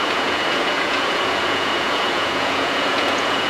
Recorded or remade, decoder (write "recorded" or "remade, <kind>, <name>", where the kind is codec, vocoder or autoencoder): remade, vocoder, Vocos